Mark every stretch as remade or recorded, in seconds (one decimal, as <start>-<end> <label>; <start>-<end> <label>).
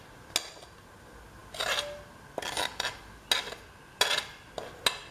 0.0-5.1 recorded